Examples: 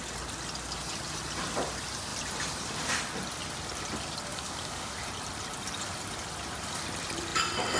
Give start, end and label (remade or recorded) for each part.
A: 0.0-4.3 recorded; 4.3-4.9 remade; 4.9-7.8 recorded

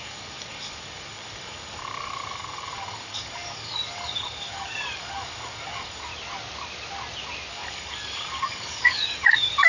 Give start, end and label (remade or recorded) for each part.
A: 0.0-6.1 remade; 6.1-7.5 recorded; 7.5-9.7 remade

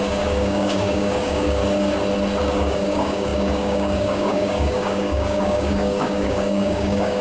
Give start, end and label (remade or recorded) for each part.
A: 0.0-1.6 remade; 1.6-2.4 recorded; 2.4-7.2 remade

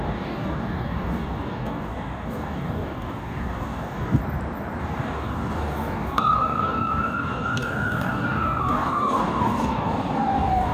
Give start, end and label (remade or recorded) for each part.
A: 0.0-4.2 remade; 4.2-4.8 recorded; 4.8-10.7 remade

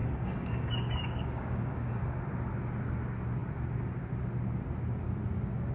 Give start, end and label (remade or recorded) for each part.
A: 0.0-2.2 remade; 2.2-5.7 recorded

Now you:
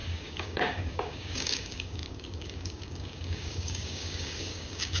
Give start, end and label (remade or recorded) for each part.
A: 0.0-5.0 remade

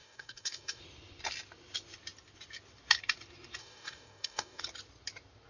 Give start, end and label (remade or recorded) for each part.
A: 0.0-0.8 remade; 0.8-3.6 recorded; 3.6-4.6 remade; 4.6-5.5 recorded